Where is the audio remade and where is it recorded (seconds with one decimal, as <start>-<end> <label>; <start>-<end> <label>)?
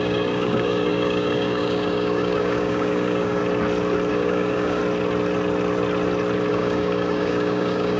0.0-3.4 remade; 3.4-4.1 recorded; 4.1-4.8 remade; 4.8-6.5 recorded; 6.5-8.0 remade